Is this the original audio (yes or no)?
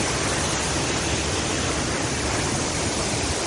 yes